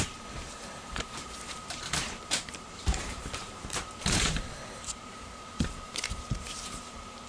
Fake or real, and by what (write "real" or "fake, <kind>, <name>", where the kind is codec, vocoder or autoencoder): fake, vocoder, BigVGAN v2